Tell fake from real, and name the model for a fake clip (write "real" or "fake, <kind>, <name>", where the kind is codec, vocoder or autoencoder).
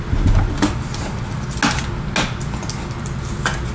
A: real